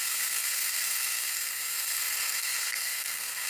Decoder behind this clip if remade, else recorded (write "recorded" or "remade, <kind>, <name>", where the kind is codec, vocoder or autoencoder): remade, codec, SNAC